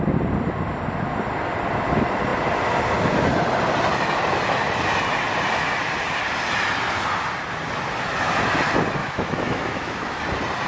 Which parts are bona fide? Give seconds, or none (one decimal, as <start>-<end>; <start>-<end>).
0.0-9.0; 10.2-10.7